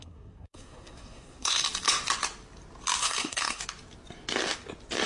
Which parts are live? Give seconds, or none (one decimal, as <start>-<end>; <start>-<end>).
1.6-3.0; 3.6-5.1